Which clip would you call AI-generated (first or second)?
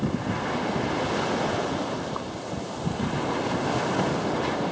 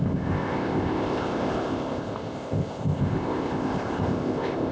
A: second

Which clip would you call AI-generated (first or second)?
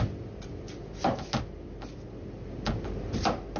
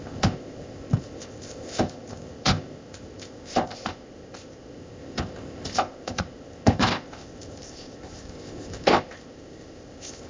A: second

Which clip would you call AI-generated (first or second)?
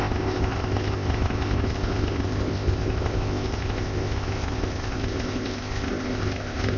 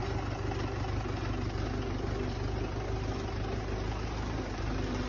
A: first